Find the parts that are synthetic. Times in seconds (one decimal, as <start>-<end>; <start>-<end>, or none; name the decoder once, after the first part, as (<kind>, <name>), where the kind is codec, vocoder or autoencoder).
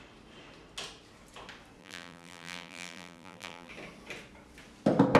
1.8-3.7 (vocoder, BigVGAN v2)